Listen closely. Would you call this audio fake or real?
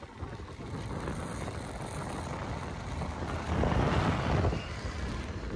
real